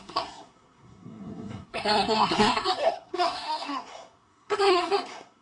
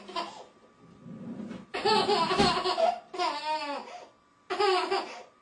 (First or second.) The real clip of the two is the second